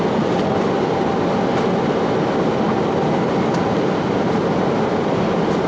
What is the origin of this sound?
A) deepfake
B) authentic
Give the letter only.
B